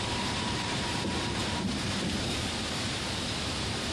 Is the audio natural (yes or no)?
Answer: no